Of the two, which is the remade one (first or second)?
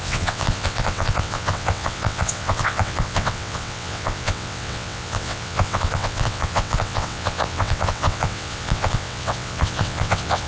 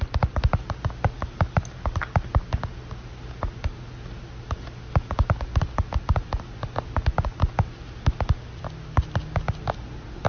first